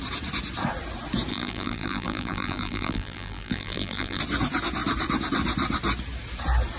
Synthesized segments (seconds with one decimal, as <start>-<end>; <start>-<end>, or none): 1.3-4.2